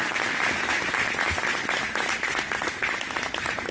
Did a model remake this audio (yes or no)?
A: no